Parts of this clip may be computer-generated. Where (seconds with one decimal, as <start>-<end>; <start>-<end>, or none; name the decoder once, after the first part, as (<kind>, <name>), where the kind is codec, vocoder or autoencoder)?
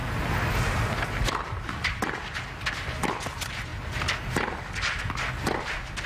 none